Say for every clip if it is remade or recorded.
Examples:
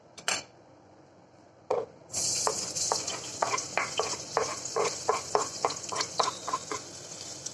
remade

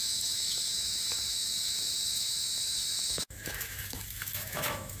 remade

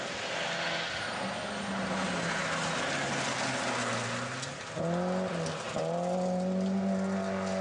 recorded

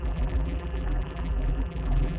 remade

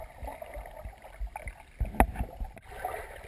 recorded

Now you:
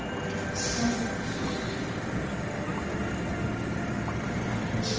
recorded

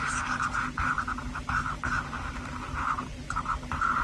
recorded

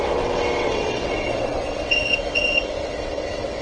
remade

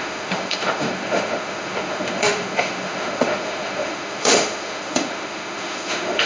remade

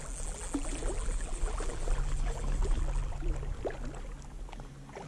recorded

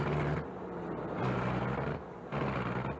recorded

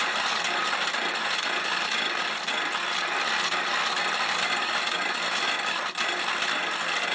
recorded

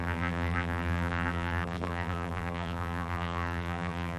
remade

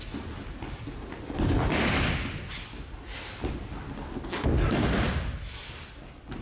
recorded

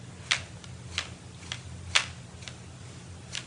recorded